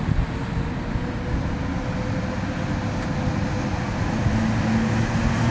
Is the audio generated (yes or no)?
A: no